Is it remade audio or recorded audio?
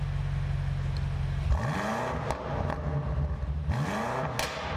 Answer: recorded